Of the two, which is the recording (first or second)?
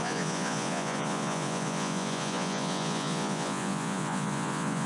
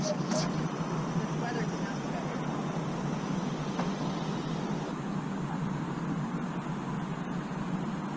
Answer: second